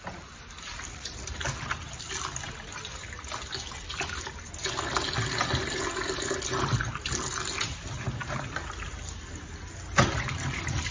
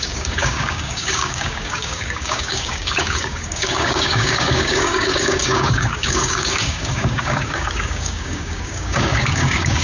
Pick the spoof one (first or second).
second